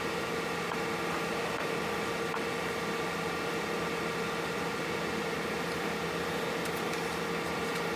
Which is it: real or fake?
real